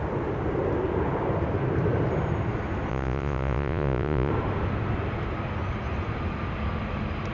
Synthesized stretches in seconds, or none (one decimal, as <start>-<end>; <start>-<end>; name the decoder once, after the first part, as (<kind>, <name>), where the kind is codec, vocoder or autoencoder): 2.9-4.3 (vocoder, Vocos)